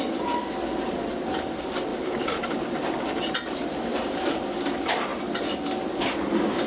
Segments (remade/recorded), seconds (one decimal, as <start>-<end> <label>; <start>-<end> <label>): 0.0-6.7 recorded